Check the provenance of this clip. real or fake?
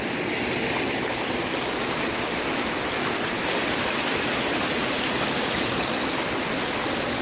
real